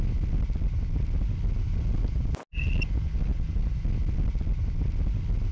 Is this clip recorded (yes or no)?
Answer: yes